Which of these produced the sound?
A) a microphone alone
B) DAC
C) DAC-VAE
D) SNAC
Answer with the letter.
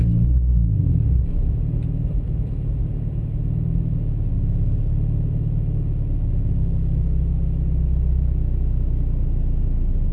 A